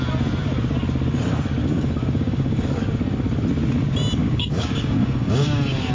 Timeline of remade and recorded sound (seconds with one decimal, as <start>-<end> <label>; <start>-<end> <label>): 0.0-1.6 recorded; 1.6-2.8 remade; 2.8-4.2 recorded; 4.2-5.9 remade